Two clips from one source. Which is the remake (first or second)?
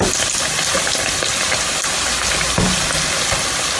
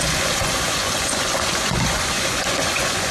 second